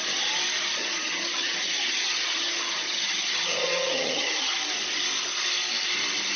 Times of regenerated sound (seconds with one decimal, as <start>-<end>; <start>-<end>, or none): 0.8-4.6